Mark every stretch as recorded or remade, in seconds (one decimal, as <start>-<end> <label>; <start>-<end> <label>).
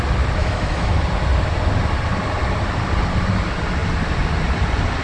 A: 0.0-0.4 recorded; 0.4-0.9 remade; 0.9-5.0 recorded